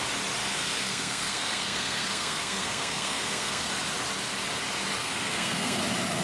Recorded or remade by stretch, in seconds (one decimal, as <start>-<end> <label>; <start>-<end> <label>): 0.0-0.4 recorded; 0.4-3.7 remade; 3.7-5.0 recorded; 5.0-5.8 remade; 5.8-6.2 recorded